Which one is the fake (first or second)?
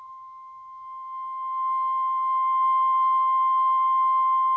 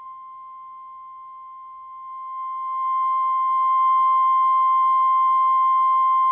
first